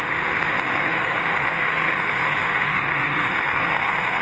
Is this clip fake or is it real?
fake